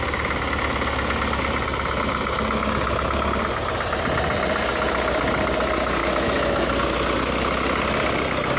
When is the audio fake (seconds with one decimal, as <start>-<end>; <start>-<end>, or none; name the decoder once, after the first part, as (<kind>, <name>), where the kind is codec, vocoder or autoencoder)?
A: 6.0-6.7 (autoencoder, DAC-VAE)